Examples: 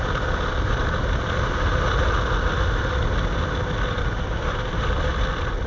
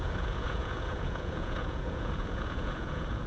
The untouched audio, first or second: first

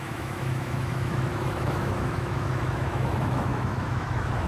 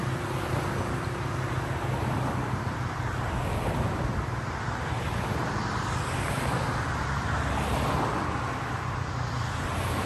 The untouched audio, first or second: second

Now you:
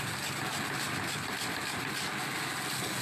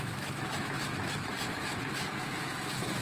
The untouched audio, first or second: first